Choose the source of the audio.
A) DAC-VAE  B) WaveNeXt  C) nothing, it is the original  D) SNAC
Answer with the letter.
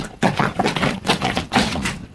B